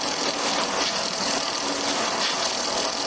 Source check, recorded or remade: recorded